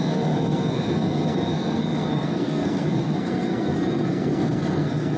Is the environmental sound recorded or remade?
remade